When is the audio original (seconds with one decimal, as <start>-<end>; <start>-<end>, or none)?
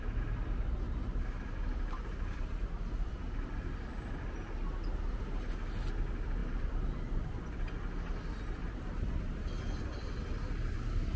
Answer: 0.0-6.4; 7.4-11.2